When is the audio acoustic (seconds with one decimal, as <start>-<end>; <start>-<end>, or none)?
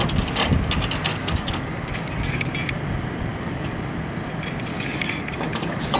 0.0-1.1; 2.5-3.3; 3.9-4.7